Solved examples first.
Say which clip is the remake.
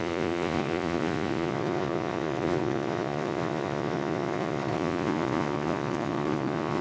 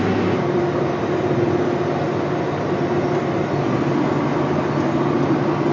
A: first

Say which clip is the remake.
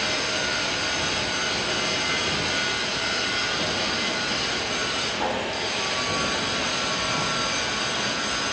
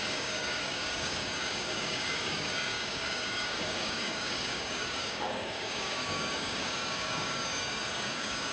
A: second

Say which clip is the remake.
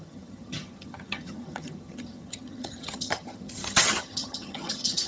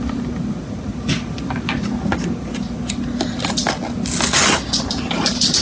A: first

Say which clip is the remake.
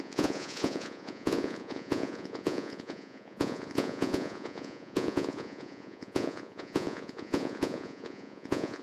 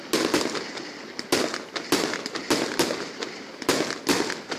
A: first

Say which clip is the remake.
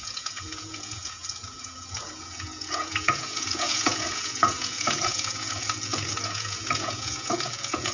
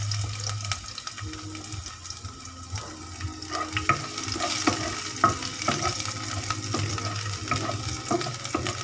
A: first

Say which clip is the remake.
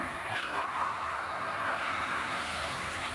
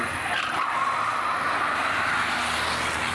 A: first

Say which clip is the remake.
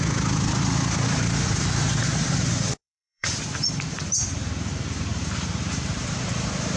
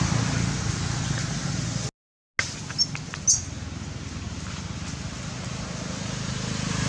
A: first